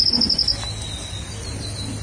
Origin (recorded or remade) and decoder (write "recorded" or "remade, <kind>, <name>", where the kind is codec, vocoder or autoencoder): recorded